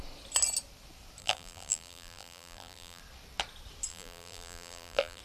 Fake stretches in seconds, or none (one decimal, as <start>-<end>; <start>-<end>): 1.2-3.0; 3.9-5.2